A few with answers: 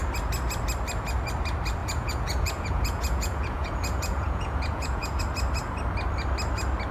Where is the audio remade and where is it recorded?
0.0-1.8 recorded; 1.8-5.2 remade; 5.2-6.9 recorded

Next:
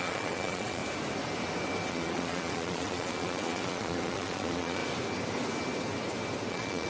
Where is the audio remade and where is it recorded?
0.0-0.8 remade; 0.8-1.9 recorded; 1.9-4.8 remade; 4.8-6.5 recorded; 6.5-6.9 remade

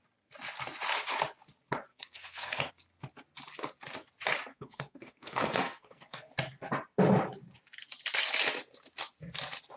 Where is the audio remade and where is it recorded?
0.0-1.9 recorded; 1.9-2.7 remade; 2.7-4.5 recorded; 4.5-6.3 remade; 6.3-9.8 recorded

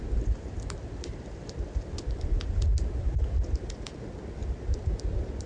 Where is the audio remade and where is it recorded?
0.0-5.5 recorded

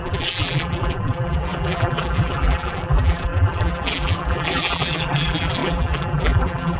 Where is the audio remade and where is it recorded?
0.0-6.8 remade

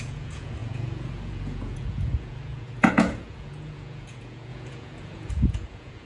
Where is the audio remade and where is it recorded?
0.0-6.1 remade

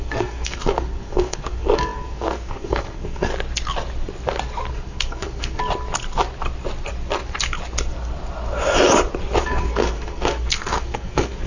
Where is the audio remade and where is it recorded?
0.0-3.3 remade; 3.3-4.7 recorded; 4.7-5.6 remade; 5.6-9.4 recorded; 9.4-11.5 remade